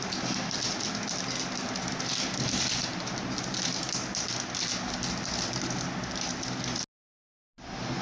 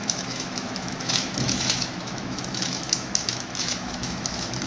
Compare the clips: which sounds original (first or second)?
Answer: first